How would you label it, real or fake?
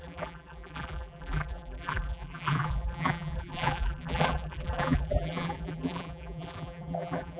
fake